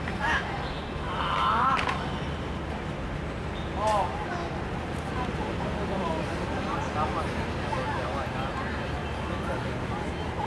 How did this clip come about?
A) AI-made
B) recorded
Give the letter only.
B